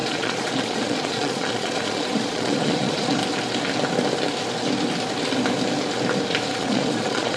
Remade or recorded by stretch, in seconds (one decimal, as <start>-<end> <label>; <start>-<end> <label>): 0.0-3.2 remade; 3.2-6.5 recorded; 6.5-7.4 remade